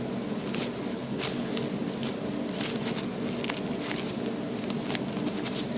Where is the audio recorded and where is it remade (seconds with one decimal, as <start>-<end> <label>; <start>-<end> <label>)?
0.0-0.9 recorded; 0.9-1.5 remade; 1.5-5.8 recorded